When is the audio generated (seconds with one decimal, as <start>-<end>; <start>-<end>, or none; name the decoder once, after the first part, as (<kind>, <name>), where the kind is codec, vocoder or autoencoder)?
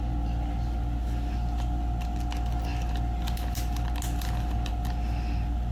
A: none